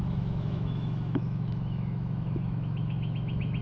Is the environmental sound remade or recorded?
remade